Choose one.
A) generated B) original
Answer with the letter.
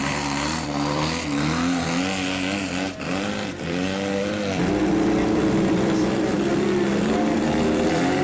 A